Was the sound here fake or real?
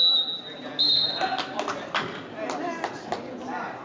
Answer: real